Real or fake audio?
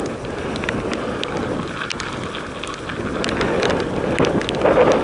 real